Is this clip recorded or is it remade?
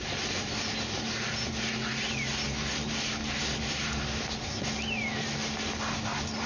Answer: recorded